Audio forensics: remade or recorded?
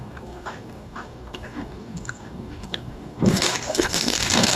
remade